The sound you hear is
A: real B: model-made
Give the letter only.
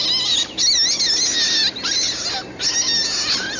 A